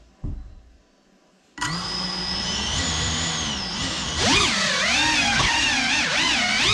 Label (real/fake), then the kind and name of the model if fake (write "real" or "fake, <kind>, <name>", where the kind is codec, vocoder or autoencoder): real